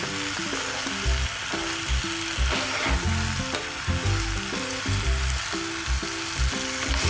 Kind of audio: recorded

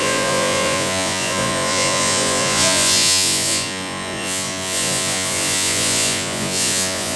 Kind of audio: remade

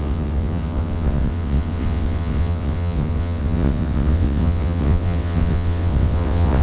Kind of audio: remade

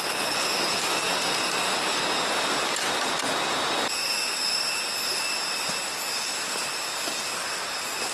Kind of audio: recorded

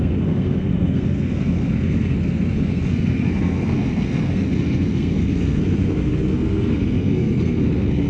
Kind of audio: remade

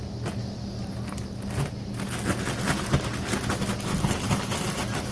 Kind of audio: recorded